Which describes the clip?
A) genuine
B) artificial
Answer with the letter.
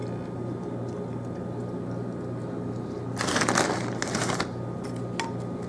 A